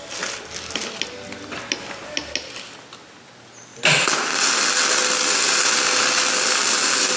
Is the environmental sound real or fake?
real